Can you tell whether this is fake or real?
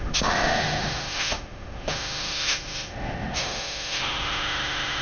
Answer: fake